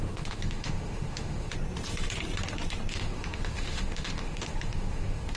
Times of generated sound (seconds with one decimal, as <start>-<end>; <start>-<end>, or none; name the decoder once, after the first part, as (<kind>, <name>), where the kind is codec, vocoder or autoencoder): 0.0-1.5 (autoencoder, DAC-VAE); 2.9-5.4